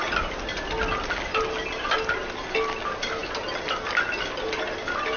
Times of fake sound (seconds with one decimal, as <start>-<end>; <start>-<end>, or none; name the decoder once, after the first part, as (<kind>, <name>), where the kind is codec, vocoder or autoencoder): none